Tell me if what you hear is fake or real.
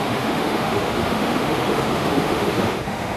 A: fake